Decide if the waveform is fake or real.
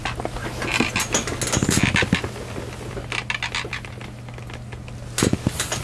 real